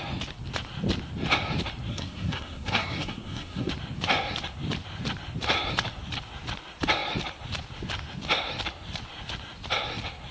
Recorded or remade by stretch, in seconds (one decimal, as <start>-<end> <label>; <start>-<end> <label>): 0.0-1.9 recorded; 1.9-3.7 remade; 3.7-10.3 recorded